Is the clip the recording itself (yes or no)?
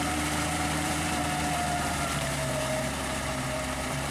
no